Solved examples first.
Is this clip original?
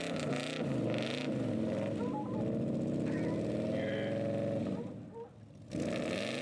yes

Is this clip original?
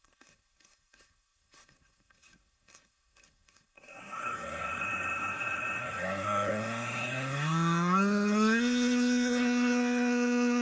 no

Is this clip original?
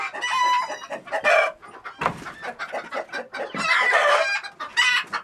yes